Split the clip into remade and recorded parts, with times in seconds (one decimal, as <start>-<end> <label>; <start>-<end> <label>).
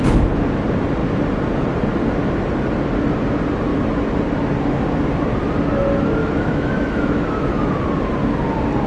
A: 0.0-6.2 recorded; 6.2-7.7 remade; 7.7-8.9 recorded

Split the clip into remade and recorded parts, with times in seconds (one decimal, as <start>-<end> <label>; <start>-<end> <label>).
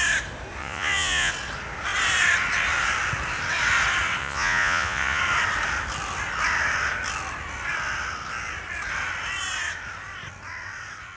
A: 0.0-0.6 recorded; 0.6-1.3 remade; 1.3-4.2 recorded; 4.2-5.2 remade; 5.2-11.2 recorded